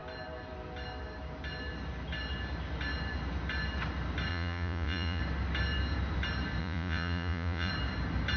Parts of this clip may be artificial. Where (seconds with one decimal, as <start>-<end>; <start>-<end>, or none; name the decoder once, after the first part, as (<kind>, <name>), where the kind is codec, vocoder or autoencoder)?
4.3-5.2 (vocoder, Vocos); 6.6-7.7